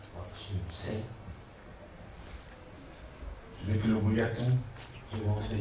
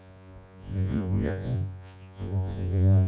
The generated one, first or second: second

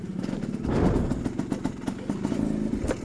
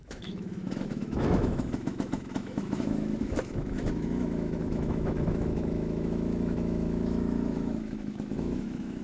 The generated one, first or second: second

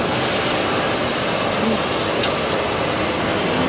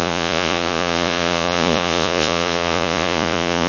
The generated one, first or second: second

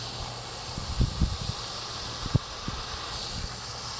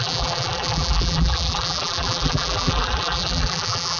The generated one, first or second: second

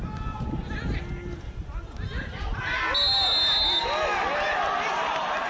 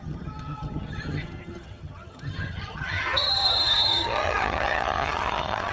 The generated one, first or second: second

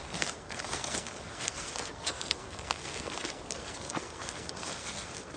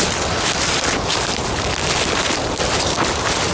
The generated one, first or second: first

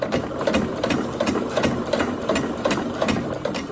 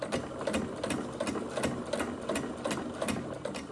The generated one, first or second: first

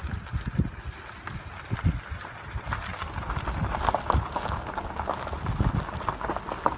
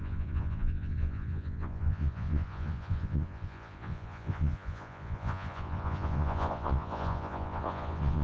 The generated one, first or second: second